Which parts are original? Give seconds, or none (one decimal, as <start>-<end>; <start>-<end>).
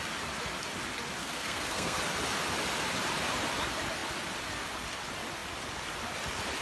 0.0-1.2; 2.0-6.6